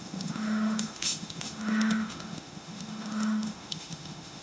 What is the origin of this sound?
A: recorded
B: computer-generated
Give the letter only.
B